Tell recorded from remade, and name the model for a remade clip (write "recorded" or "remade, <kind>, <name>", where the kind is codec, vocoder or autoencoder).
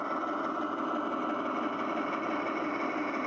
recorded